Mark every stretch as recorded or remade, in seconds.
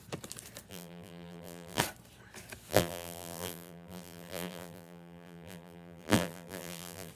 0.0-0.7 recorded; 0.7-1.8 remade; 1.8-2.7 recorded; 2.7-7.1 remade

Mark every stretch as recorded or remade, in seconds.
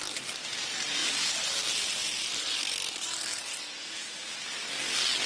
0.0-1.0 recorded; 1.0-1.6 remade; 1.6-2.0 recorded; 2.0-4.3 remade; 4.3-5.3 recorded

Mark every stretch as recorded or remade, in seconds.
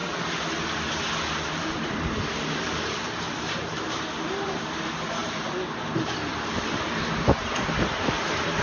0.0-1.3 recorded; 1.3-8.6 remade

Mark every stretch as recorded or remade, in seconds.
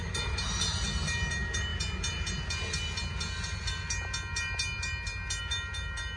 0.0-6.2 recorded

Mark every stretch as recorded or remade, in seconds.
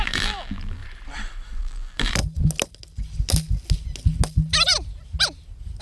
0.0-0.8 remade; 0.8-1.6 recorded; 1.6-2.2 remade; 2.2-5.8 recorded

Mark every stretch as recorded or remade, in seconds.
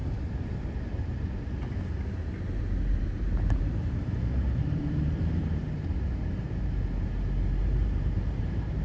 0.0-2.9 recorded; 2.9-5.6 remade; 5.6-7.6 recorded; 7.6-8.8 remade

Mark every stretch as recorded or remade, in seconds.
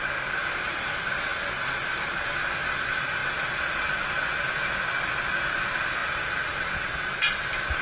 0.0-6.0 recorded; 6.0-6.6 remade; 6.6-7.8 recorded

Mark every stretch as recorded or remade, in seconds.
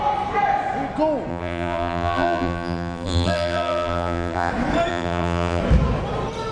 0.0-1.3 recorded; 1.3-4.5 remade; 4.5-4.9 recorded; 4.9-5.6 remade; 5.6-6.5 recorded